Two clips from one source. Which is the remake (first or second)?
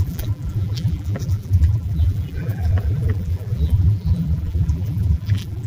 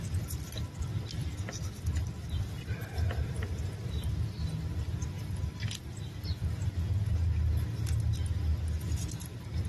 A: first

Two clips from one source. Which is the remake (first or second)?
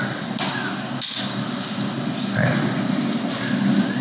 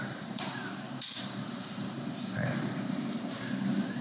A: second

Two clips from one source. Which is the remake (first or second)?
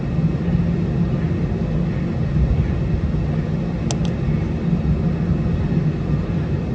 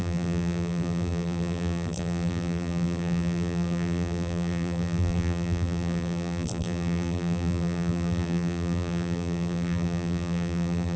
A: second